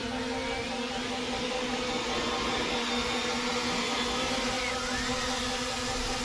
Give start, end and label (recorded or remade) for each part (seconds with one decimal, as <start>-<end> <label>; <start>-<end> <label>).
0.0-6.2 recorded